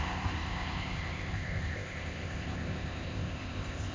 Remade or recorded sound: remade